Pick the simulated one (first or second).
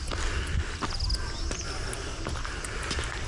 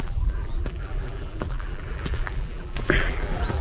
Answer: second